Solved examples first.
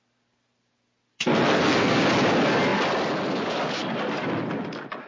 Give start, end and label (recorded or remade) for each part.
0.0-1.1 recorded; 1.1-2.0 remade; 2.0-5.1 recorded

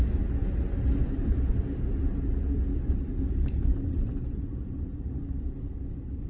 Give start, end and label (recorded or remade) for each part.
0.0-0.4 recorded; 0.4-1.5 remade; 1.5-2.0 recorded; 2.0-5.8 remade; 5.8-6.3 recorded